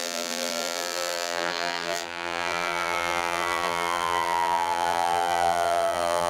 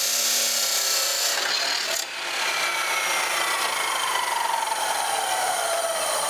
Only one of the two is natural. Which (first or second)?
second